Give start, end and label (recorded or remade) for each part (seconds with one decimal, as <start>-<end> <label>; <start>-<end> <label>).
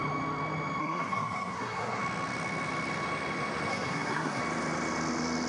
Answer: 0.0-0.8 recorded; 0.8-2.0 remade; 2.0-3.7 recorded; 3.7-4.4 remade; 4.4-5.5 recorded